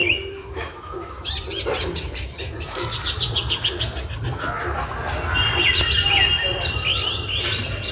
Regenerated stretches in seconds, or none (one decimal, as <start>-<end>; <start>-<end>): 0.0-1.3